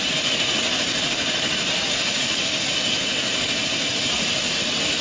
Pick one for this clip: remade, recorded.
recorded